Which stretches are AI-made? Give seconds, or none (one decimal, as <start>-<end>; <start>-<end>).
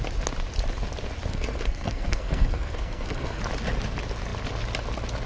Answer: 1.3-3.4